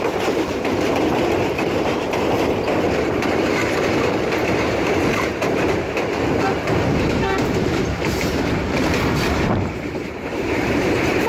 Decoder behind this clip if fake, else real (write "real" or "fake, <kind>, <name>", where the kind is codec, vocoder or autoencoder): fake, vocoder, BigVGAN v2